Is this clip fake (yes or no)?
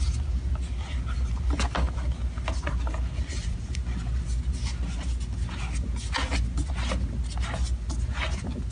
no